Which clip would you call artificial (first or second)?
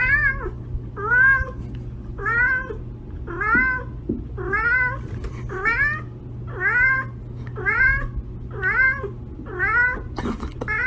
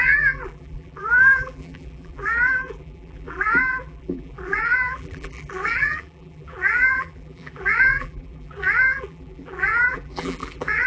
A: second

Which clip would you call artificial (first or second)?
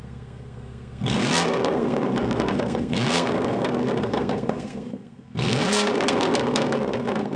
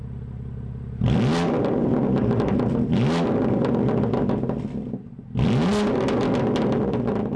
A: first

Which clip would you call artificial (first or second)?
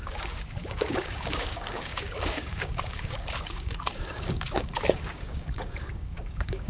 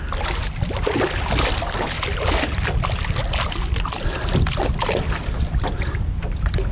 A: first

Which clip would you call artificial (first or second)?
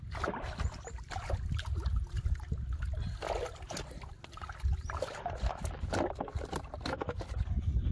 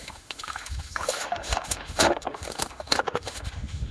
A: second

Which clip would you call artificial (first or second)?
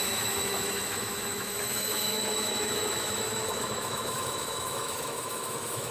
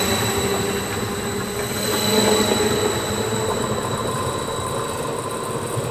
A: first